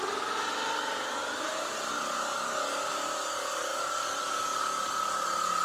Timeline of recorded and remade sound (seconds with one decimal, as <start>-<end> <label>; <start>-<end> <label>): 0.0-0.5 recorded; 0.5-1.2 remade; 1.2-1.9 recorded; 1.9-5.6 remade